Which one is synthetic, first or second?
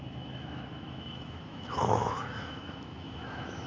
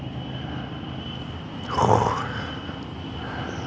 first